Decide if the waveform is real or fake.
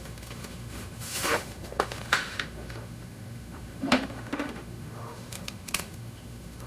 fake